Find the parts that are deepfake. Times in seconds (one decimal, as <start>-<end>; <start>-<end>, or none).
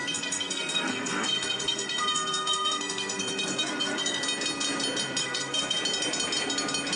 0.0-4.2; 5.2-5.8